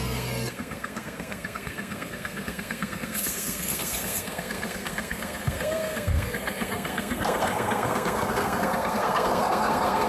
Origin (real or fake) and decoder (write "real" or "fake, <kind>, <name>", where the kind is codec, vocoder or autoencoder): fake, codec, SNAC